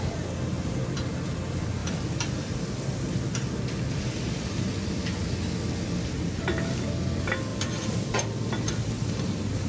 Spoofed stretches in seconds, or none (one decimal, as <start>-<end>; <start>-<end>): 1.8-4.6; 7.5-9.7